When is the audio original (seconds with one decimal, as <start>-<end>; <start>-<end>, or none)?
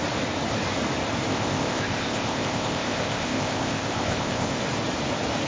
0.0-1.3; 4.6-5.5